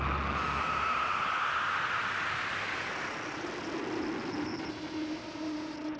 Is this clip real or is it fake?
real